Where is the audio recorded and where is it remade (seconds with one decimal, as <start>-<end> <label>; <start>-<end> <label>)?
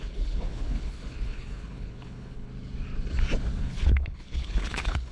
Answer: 0.0-2.5 remade; 2.5-3.6 recorded; 3.6-5.1 remade